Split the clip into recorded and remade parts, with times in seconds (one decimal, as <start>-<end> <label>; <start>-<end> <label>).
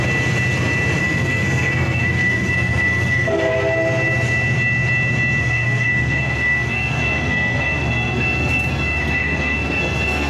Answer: 0.0-1.0 recorded; 1.0-3.5 remade; 3.5-5.4 recorded; 5.4-10.3 remade